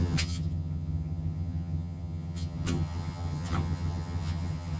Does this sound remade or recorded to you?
remade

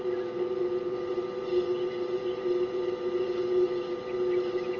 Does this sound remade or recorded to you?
recorded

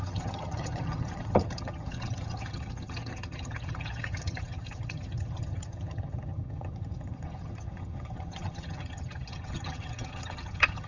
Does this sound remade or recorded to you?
remade